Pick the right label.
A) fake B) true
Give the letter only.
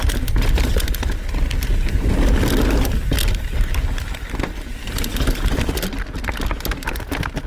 B